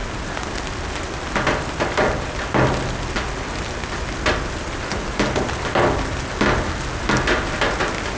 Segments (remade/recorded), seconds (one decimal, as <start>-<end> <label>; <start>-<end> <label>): 0.0-8.2 recorded